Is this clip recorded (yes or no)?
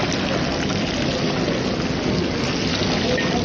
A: yes